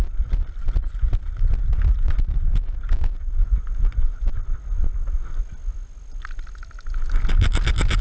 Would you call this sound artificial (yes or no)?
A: no